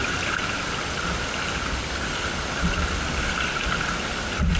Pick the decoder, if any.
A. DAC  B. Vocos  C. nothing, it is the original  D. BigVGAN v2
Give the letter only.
C